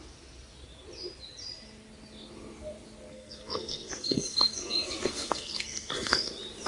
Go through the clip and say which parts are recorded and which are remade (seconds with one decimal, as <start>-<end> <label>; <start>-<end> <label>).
0.0-3.1 recorded; 3.1-6.3 remade; 6.3-6.7 recorded